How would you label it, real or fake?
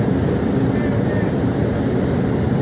real